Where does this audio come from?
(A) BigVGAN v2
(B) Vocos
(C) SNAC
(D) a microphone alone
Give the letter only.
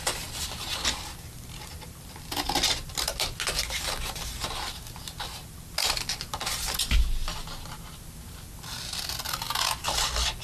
D